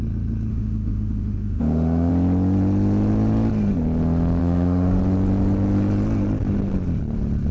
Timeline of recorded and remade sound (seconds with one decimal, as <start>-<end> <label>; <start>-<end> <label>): 0.0-0.5 recorded; 0.5-2.1 remade; 2.1-4.4 recorded; 4.4-5.0 remade; 5.0-7.5 recorded